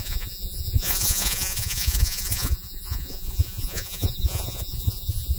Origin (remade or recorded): remade